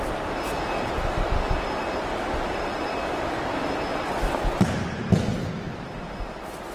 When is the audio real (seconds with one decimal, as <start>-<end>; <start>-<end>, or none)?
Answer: 0.0-6.7